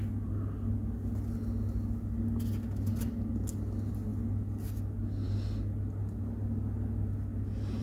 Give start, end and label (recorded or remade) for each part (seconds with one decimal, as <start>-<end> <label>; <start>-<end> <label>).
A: 0.0-7.8 recorded